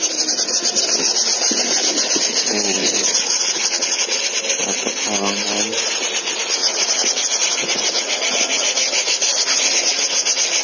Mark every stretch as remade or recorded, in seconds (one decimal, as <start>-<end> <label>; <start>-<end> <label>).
0.0-2.8 recorded; 2.8-4.2 remade; 4.2-6.6 recorded; 6.6-9.4 remade; 9.4-10.6 recorded